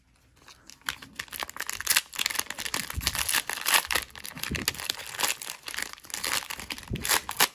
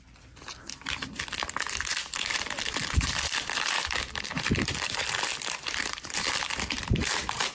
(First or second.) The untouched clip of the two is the first